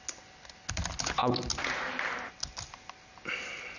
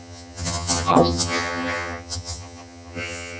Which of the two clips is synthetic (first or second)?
second